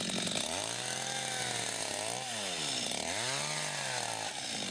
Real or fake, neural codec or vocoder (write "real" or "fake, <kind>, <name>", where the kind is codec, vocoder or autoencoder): real